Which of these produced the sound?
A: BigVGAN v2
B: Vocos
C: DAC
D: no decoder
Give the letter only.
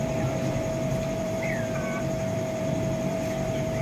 A